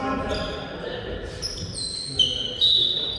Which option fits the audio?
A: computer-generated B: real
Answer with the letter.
B